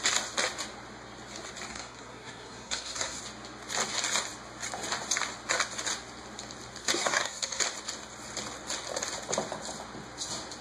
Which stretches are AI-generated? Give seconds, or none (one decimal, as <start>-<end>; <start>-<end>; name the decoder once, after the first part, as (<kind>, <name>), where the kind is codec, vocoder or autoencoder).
1.7-3.2 (codec, SNAC); 6.8-7.6